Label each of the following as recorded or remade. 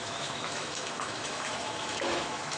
remade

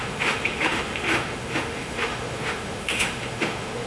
remade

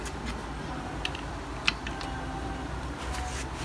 recorded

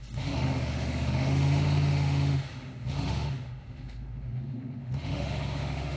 remade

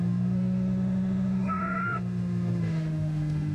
remade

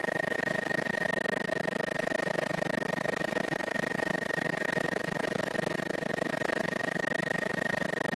remade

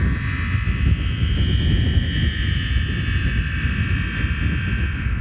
recorded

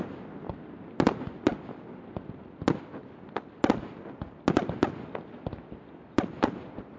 recorded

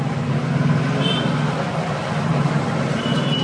recorded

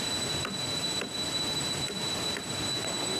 recorded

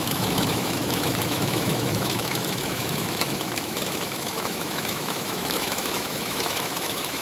remade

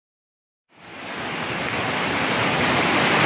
recorded